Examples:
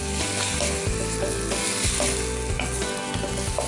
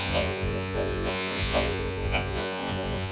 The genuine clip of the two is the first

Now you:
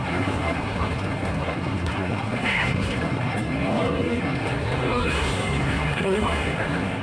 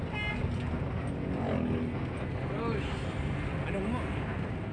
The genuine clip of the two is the second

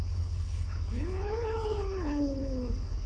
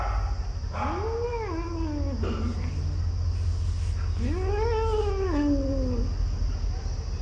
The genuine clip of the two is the second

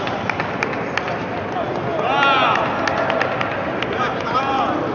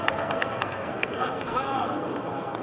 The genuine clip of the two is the first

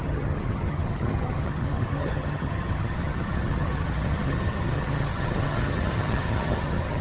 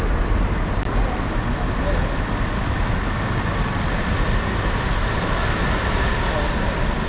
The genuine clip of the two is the second